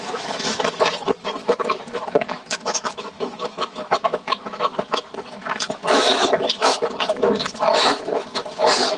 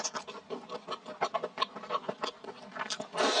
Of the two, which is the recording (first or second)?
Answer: second